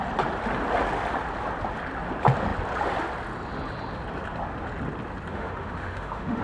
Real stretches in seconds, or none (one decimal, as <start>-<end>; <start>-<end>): 0.0-5.3